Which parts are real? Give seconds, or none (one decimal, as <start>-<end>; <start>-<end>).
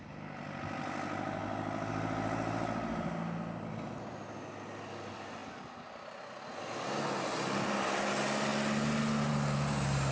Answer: 0.0-10.1